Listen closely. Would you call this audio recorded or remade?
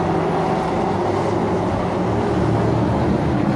recorded